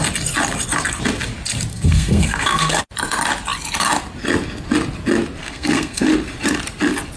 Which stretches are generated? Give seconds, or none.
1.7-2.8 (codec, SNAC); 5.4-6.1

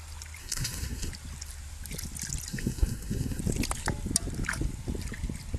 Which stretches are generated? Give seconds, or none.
0.4-1.1 (codec, SNAC); 2.5-3.4

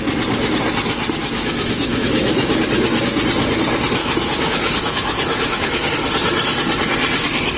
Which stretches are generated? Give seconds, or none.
1.2-3.1 (autoencoder, DAC-VAE); 4.0-5.9

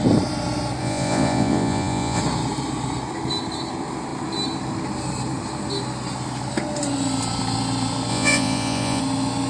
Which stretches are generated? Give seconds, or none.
0.8-2.2 (vocoder, Vocos); 8.1-9.0

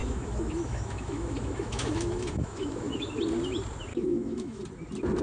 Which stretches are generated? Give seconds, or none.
0.0-3.1 (autoencoder, DAC-VAE); 3.9-4.6